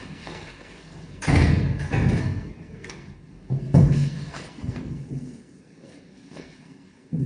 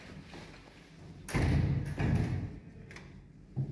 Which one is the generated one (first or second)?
first